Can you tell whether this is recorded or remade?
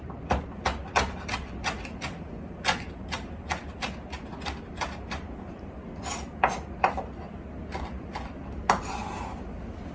recorded